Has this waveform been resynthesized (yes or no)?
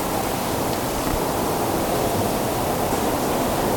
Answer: yes